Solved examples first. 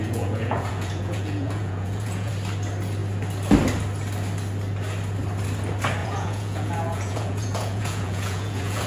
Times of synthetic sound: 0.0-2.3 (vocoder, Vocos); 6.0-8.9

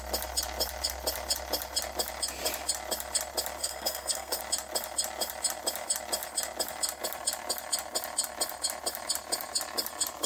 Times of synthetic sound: 3.6-4.4 (codec, SNAC)

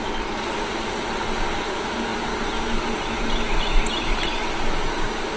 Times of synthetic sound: none

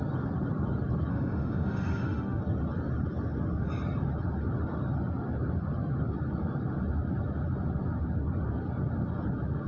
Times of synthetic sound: 1.1-2.4 (autoencoder, DAC-VAE)

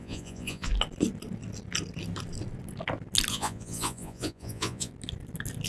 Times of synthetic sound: 0.0-0.7 (vocoder, Vocos); 3.3-4.9

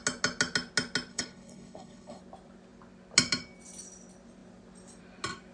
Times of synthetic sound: 1.1-2.2 (codec, HILCodec)

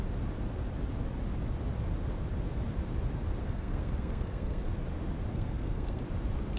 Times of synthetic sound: 3.4-4.7 (codec, SNAC); 5.3-6.0

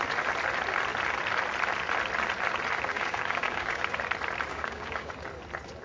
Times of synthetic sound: 2.9-3.8 (codec, DAC); 4.5-5.1